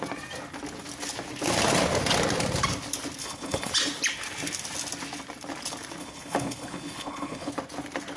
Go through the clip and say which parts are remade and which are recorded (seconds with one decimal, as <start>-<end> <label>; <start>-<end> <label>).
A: 0.0-3.2 recorded; 3.2-3.7 remade; 3.7-6.0 recorded; 6.0-7.5 remade; 7.5-8.2 recorded